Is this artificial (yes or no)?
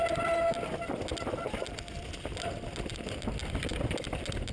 no